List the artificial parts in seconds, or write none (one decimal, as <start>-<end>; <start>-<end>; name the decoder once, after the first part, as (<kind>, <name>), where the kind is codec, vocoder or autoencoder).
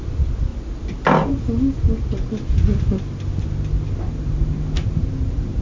none